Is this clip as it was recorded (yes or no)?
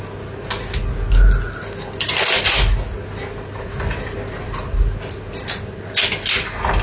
yes